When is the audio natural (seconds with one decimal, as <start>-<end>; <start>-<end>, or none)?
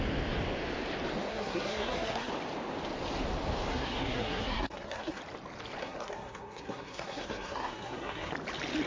0.0-1.3; 2.3-3.7; 5.2-5.8; 8.3-8.9